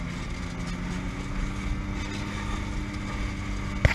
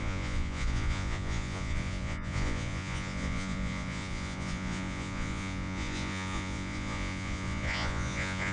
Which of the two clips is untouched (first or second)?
first